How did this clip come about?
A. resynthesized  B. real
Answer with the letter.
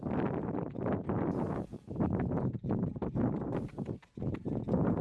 A